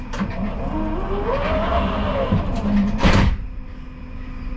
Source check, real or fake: real